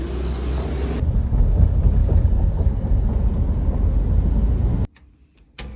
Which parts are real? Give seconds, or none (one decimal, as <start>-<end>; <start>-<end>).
0.0-2.0; 2.5-5.8